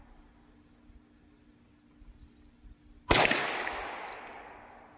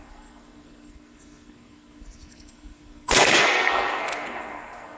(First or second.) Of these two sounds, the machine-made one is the second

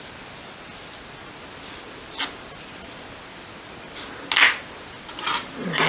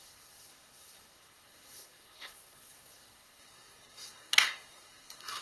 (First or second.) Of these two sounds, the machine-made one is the second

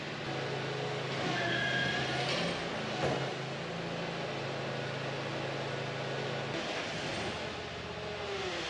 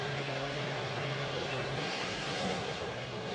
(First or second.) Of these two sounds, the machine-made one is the second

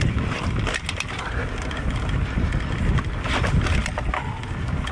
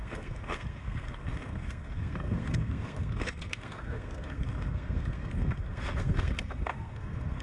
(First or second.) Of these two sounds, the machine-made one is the second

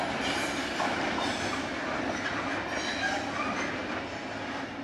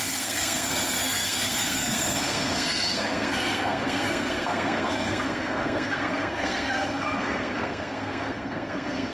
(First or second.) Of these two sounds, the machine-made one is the second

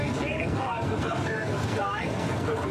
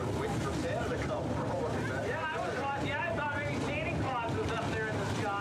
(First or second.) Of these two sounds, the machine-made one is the first